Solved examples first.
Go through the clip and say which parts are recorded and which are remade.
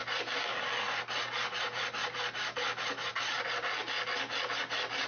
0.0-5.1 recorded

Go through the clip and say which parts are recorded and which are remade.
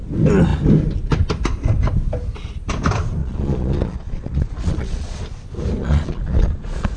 0.0-3.2 recorded; 3.2-5.2 remade; 5.2-5.8 recorded; 5.8-7.0 remade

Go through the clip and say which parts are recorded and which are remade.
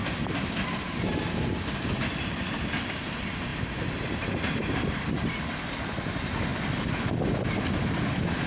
0.0-3.5 recorded; 3.5-5.3 remade; 5.3-8.5 recorded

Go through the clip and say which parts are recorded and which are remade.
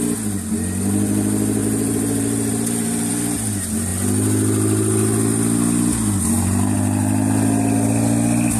0.0-1.6 recorded; 1.6-3.1 remade; 3.1-8.6 recorded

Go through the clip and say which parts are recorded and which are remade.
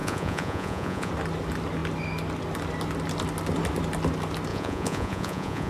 0.0-1.1 remade; 1.1-4.5 recorded; 4.5-5.7 remade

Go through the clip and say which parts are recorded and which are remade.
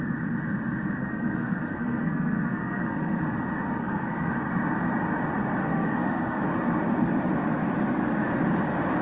0.0-1.0 recorded; 1.0-3.2 remade; 3.2-3.8 recorded; 3.8-4.3 remade; 4.3-5.6 recorded; 5.6-6.4 remade; 6.4-9.0 recorded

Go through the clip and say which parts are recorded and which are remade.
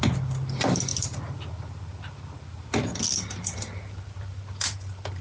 0.0-5.2 recorded